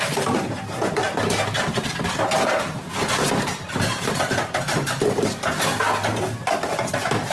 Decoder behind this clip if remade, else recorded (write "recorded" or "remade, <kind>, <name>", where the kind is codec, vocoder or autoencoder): recorded